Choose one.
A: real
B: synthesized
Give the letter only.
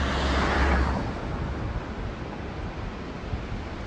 A